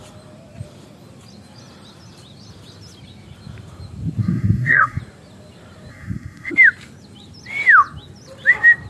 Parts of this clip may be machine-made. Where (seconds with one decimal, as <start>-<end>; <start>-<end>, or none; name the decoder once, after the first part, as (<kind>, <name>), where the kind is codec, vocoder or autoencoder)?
4.2-5.0 (codec, SNAC); 5.9-6.5